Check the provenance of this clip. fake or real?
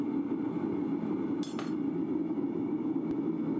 real